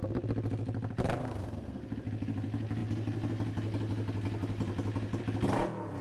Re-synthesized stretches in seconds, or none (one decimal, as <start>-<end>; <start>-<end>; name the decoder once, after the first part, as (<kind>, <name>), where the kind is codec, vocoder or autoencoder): 1.2-1.8 (codec, SNAC)